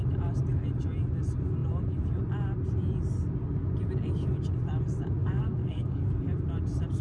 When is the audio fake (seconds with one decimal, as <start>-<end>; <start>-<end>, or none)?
5.2-6.2